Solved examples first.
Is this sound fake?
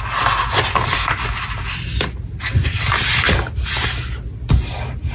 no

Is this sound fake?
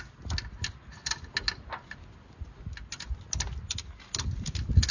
no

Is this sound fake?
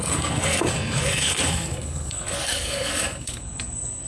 yes